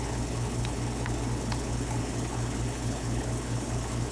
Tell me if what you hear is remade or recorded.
remade